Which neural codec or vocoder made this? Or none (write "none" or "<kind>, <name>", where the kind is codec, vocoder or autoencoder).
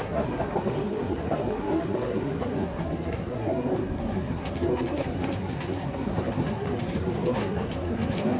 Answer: codec, SNAC